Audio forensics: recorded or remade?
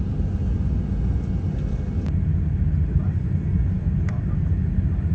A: recorded